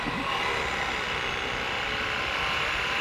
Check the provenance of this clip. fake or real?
real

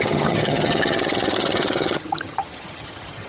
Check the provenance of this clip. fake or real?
fake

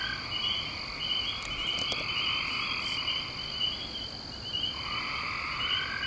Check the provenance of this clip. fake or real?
real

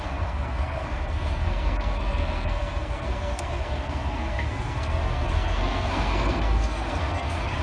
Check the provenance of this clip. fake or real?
fake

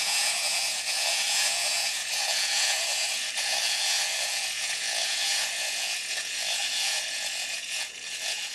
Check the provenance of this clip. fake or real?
fake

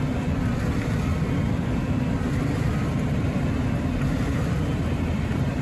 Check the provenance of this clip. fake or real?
fake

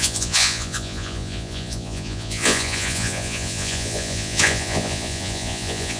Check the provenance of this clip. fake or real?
fake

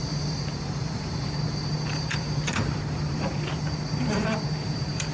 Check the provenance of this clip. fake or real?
fake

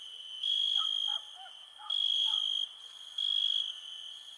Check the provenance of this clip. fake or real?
real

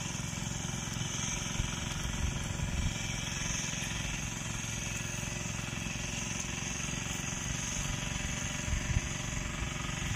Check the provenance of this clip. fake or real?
real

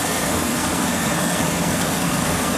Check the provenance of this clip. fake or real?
fake